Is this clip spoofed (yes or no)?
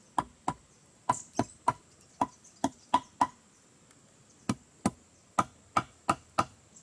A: no